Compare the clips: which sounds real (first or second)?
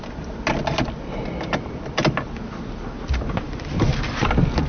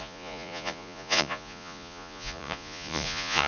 first